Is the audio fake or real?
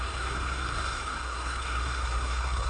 fake